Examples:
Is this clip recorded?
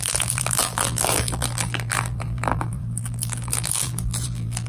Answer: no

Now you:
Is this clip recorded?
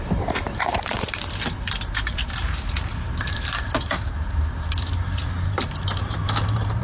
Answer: no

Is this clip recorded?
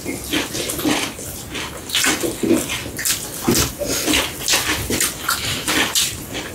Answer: yes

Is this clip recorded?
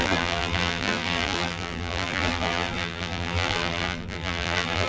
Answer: no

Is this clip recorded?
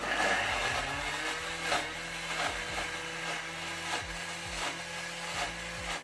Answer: yes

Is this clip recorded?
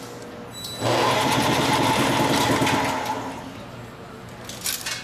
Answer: yes